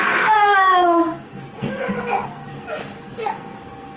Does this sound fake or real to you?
fake